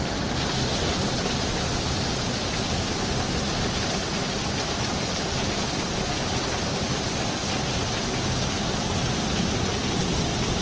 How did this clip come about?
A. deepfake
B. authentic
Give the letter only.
B